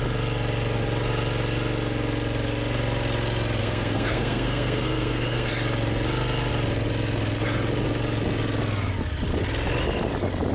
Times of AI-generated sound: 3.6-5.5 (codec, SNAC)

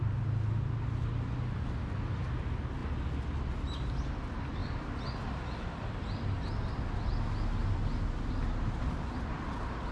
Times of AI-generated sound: none

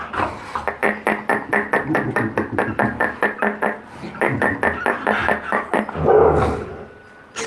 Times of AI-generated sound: none

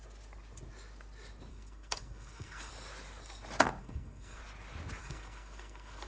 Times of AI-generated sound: 1.5-2.7 (codec, SNAC); 3.8-4.4; 5.0-6.1

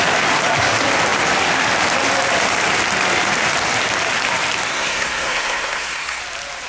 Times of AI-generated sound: 4.7-6.2 (codec, SNAC)

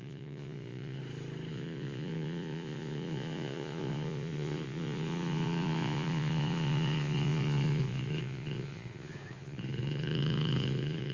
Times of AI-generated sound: 0.0-1.0 (vocoder, Vocos); 1.5-11.1

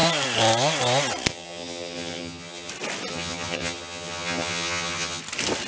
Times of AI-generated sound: 1.3-2.7 (vocoder, HiFi-GAN); 3.1-5.2